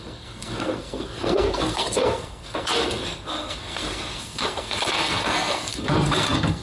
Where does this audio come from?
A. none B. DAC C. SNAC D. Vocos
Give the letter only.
C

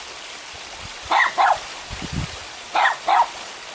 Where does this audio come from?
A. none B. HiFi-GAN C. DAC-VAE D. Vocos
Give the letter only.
A